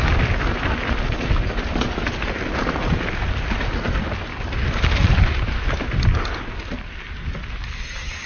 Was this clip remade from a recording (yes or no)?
no